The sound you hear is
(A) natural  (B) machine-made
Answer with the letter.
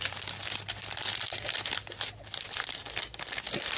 A